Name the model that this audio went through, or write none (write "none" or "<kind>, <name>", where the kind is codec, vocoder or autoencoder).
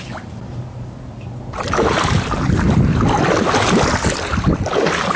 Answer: none